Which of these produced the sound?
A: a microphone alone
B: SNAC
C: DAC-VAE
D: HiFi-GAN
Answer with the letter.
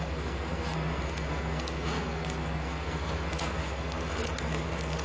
B